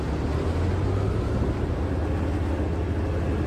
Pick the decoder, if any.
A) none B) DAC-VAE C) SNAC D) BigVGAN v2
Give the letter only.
A